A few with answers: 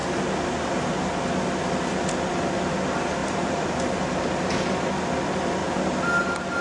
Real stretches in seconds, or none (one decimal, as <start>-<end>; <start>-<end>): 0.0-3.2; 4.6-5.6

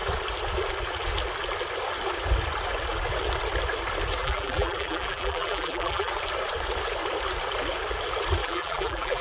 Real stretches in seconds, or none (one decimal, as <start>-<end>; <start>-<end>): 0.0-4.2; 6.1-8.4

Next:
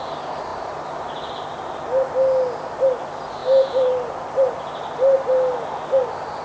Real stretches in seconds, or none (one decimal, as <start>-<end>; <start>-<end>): 0.0-0.5; 1.3-3.4; 3.9-6.4